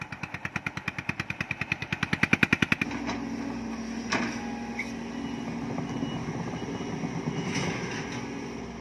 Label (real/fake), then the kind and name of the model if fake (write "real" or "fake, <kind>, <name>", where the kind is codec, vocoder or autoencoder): real